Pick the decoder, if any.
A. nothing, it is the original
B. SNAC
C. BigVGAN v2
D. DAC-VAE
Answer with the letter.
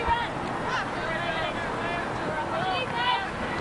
A